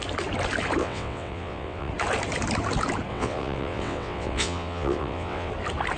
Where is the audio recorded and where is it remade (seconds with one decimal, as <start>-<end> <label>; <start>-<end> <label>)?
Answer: 0.0-0.8 recorded; 0.8-1.9 remade; 1.9-3.1 recorded; 3.1-5.5 remade; 5.5-6.0 recorded